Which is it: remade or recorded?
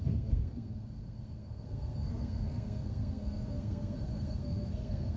remade